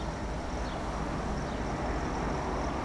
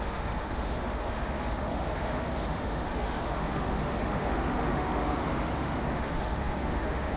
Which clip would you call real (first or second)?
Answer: first